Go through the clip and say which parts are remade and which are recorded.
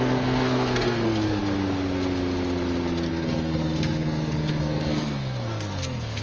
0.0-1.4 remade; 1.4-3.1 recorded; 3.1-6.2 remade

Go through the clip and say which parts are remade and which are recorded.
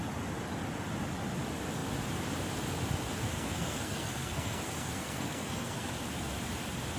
0.0-3.2 recorded; 3.2-5.9 remade; 5.9-7.0 recorded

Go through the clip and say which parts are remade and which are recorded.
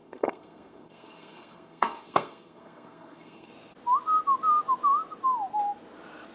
0.0-3.5 remade; 3.5-6.3 recorded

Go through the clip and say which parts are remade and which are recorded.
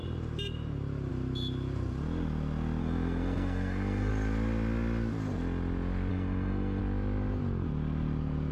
0.0-2.8 recorded; 2.8-4.1 remade; 4.1-6.1 recorded; 6.1-6.8 remade; 6.8-8.5 recorded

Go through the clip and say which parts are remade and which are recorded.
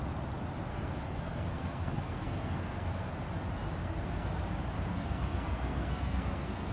0.0-0.7 recorded; 0.7-3.1 remade; 3.1-3.8 recorded; 3.8-4.4 remade; 4.4-4.9 recorded; 4.9-6.7 remade